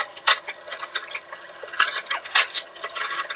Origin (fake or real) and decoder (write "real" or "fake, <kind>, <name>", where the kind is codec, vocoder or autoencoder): fake, vocoder, HiFi-GAN